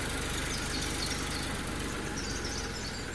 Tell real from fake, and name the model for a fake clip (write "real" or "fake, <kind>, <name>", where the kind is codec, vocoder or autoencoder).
real